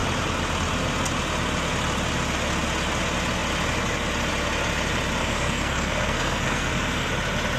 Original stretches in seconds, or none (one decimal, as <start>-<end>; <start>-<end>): 0.0-5.2; 7.1-7.6